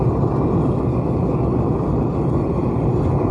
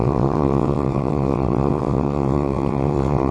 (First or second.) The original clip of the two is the first